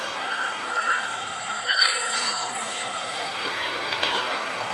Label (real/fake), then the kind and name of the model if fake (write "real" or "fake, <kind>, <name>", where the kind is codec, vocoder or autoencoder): fake, codec, SNAC